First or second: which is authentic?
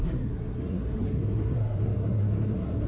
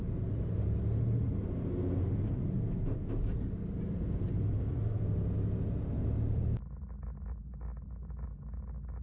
second